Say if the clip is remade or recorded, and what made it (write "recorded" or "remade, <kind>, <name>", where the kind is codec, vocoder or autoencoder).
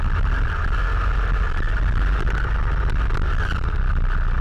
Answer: recorded